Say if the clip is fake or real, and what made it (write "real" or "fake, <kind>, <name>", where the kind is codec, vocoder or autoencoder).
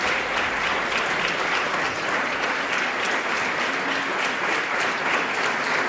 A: real